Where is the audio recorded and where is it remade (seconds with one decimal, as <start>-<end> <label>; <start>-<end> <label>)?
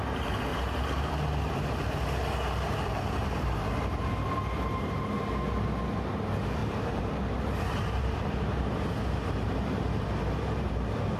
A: 0.0-0.5 recorded; 0.5-4.1 remade; 4.1-6.6 recorded; 6.6-10.7 remade; 10.7-11.2 recorded